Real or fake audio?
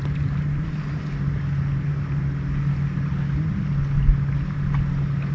real